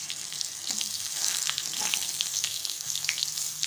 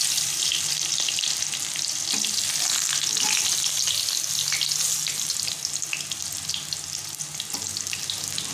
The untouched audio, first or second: second